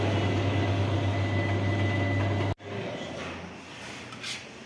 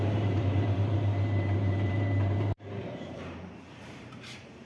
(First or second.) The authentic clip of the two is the first